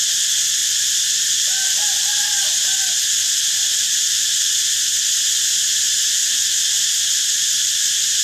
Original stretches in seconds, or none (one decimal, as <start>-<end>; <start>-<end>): 0.0-0.6; 2.1-3.7; 4.5-6.2

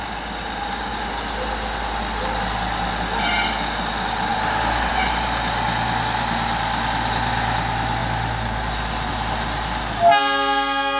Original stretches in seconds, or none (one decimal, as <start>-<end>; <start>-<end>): 0.0-11.0

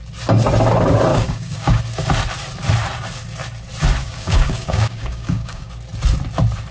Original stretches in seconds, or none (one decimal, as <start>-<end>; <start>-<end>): 0.0-1.1; 1.8-4.0; 5.7-6.7

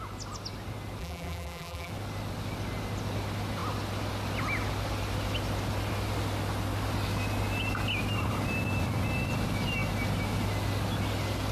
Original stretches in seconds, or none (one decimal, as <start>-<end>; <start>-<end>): 0.0-1.0; 1.9-11.5

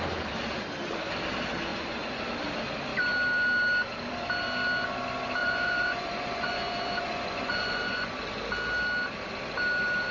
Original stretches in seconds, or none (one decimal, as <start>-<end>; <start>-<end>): 0.0-1.7; 2.2-5.4; 8.2-10.1

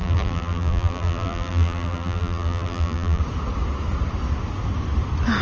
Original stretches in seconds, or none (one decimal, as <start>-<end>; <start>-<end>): 3.2-5.4

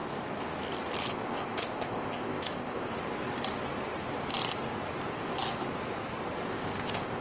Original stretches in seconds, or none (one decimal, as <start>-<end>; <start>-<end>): 0.0-1.1; 2.9-6.5